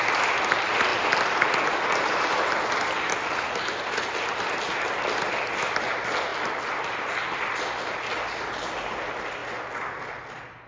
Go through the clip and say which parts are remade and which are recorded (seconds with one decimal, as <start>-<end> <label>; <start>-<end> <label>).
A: 0.0-10.7 recorded

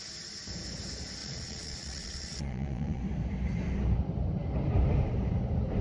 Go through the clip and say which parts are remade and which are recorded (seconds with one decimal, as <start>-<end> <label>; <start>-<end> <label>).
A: 0.0-1.2 recorded; 1.2-3.0 remade; 3.0-5.8 recorded

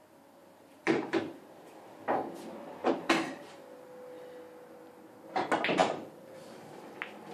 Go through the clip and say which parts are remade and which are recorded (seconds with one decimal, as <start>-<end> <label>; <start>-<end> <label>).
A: 0.0-0.4 recorded; 0.4-1.2 remade; 1.2-2.8 recorded; 2.8-3.5 remade; 3.5-5.8 recorded; 5.8-6.8 remade; 6.8-7.3 recorded

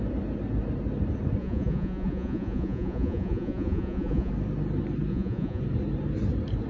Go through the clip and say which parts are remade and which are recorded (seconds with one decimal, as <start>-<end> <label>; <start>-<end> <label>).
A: 0.0-1.4 recorded; 1.4-4.3 remade; 4.3-5.1 recorded; 5.1-5.6 remade; 5.6-6.7 recorded

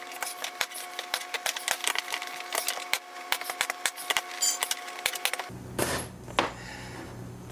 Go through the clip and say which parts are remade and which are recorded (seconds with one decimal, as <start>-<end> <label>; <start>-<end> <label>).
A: 0.0-7.5 recorded